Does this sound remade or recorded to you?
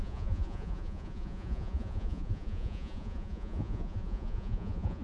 remade